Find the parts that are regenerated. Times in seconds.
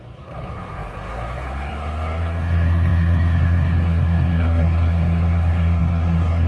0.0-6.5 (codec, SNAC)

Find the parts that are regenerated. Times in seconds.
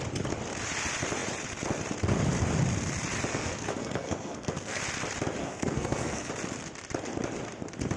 3.3-4.8 (codec, SNAC); 5.4-6.3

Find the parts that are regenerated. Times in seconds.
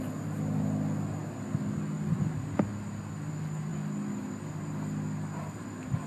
none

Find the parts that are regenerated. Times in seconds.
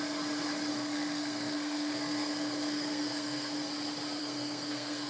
0.7-3.7 (codec, SNAC); 4.2-5.1